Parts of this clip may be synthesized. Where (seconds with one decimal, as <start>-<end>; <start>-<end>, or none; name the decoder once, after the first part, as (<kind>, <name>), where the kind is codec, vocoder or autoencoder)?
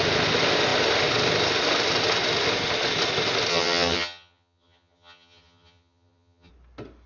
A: 3.5-6.5 (vocoder, HiFi-GAN)